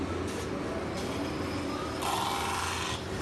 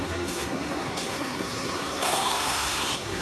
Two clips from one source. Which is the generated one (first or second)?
second